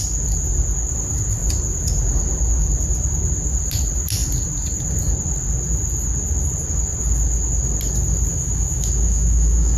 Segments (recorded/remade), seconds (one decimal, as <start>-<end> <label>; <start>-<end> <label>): 0.0-8.3 recorded; 8.3-9.8 remade